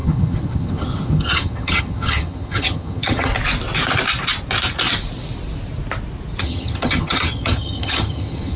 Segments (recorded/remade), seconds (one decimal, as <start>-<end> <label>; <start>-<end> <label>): 0.0-3.3 remade; 3.3-6.4 recorded; 6.4-8.6 remade